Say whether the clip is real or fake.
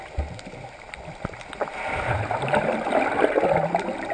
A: real